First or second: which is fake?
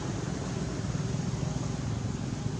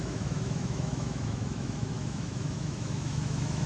second